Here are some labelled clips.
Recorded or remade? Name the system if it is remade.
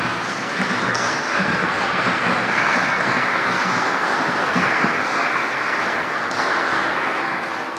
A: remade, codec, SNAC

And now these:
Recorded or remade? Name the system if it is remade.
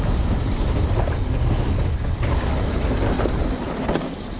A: recorded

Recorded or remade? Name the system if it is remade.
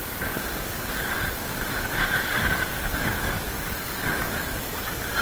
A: remade, codec, DAC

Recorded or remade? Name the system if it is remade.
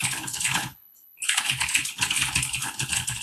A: remade, codec, HILCodec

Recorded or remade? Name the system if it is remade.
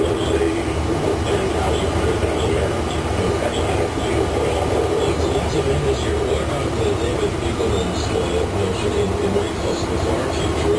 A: recorded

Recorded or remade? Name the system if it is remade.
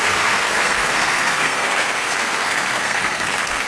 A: remade, codec, SNAC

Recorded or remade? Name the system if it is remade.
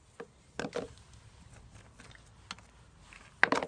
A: recorded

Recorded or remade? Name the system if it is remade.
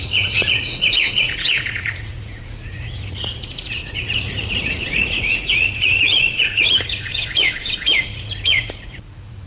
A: remade, vocoder, Vocos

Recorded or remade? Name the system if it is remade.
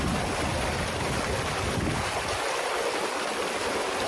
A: recorded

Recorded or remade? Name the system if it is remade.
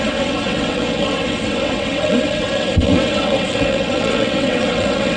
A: remade, vocoder, WaveNeXt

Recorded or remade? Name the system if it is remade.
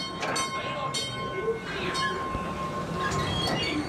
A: recorded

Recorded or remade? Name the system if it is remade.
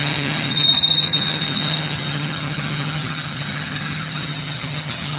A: remade, vocoder, HiFi-GAN